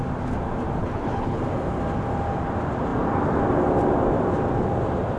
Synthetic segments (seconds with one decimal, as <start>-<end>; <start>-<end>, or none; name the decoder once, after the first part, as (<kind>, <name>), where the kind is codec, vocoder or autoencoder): 0.8-1.4 (codec, HILCodec)